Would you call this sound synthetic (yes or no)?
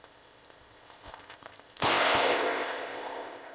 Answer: yes